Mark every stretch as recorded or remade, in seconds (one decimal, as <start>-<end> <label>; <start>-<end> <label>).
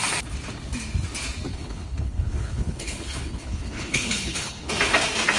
0.0-1.5 recorded; 1.5-4.7 remade; 4.7-5.4 recorded